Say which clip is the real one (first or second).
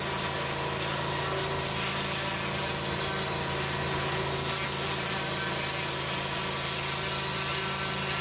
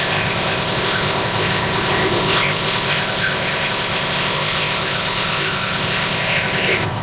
first